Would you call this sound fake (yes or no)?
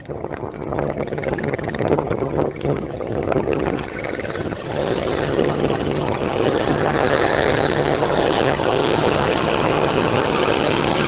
yes